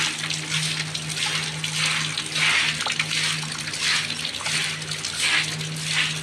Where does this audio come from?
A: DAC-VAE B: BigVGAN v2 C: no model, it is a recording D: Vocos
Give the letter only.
C